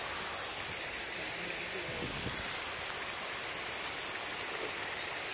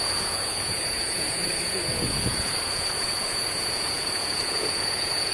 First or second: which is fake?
second